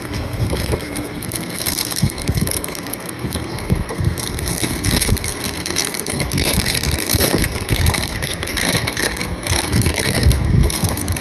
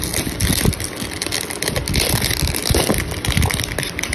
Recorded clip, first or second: second